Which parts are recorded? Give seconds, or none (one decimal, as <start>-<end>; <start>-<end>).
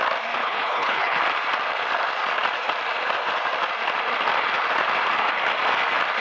0.0-0.4; 1.2-6.2